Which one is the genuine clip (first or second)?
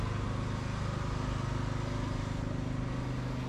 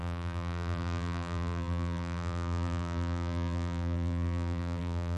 first